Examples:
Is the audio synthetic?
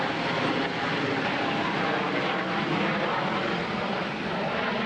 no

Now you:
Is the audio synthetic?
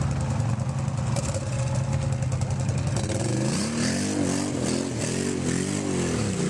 no